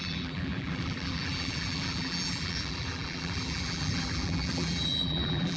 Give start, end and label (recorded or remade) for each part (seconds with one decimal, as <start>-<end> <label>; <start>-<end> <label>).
0.0-5.6 remade